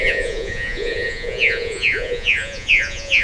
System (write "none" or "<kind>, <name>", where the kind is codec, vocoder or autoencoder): vocoder, Vocos